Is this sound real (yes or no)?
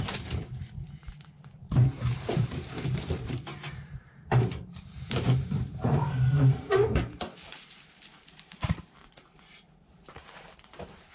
no